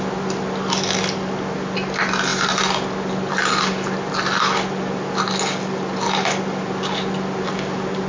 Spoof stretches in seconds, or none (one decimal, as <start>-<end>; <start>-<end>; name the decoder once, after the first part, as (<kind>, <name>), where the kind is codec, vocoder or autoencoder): none